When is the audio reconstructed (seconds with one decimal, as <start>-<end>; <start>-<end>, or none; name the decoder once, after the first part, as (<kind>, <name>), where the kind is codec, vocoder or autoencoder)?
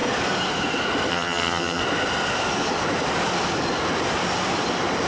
1.1-1.8 (vocoder, HiFi-GAN)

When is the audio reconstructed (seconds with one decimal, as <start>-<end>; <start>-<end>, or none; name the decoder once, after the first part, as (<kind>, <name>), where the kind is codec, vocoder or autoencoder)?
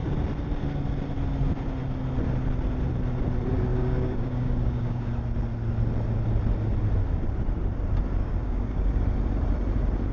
3.7-5.1 (codec, DAC); 8.2-9.0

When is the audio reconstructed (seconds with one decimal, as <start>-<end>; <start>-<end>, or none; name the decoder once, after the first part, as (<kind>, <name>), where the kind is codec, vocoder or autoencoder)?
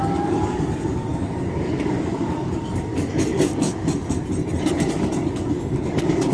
0.0-3.8 (codec, DAC); 4.6-6.3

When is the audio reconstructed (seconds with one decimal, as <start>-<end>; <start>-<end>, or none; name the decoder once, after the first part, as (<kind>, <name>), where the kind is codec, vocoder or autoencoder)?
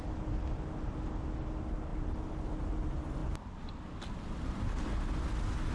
1.9-2.7 (vocoder, BigVGAN v2)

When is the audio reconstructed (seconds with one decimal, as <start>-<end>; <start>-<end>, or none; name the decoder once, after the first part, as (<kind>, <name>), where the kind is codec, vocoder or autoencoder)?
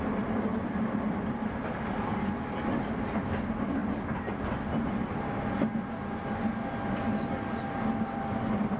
0.0-3.8 (vocoder, BigVGAN v2); 8.0-8.8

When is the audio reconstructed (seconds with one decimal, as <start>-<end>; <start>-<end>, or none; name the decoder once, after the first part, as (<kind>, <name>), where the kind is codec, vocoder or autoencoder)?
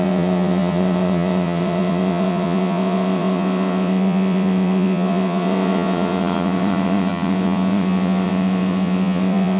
0.0-9.6 (vocoder, WaveNeXt)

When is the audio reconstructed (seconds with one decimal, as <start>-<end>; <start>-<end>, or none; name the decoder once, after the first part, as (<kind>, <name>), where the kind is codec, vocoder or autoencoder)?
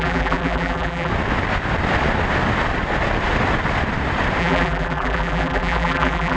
0.0-1.1 (vocoder, BigVGAN v2); 4.4-6.4